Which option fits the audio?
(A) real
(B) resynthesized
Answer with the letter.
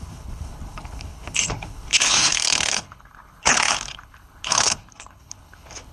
B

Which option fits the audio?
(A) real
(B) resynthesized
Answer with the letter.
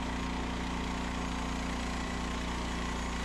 A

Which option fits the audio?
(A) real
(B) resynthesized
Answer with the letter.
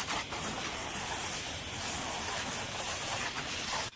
A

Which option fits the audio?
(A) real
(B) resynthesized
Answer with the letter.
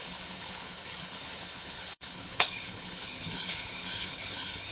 B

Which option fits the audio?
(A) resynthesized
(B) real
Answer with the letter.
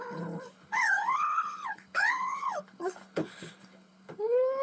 A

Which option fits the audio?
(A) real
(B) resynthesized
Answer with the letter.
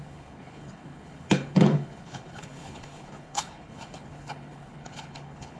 B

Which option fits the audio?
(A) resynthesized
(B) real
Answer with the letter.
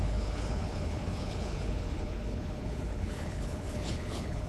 A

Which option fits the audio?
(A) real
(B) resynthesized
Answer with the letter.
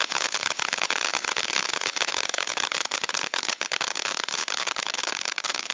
B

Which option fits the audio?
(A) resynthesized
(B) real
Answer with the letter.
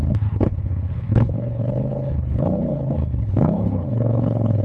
A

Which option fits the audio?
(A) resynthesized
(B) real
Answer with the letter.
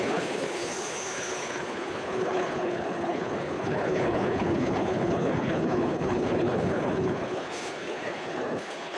A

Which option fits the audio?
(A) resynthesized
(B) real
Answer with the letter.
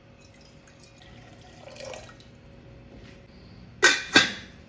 B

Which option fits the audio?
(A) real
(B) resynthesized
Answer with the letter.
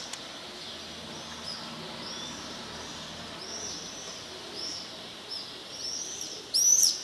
A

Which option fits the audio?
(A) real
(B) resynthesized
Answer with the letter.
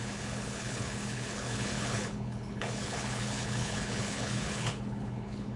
B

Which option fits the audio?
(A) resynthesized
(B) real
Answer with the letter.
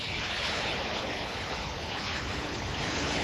A